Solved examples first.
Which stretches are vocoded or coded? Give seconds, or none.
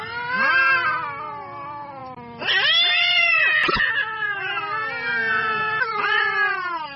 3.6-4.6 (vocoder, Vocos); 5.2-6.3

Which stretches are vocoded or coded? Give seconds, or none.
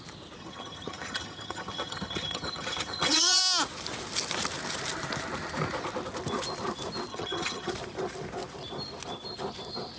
0.4-3.4 (vocoder, HiFi-GAN); 7.1-7.7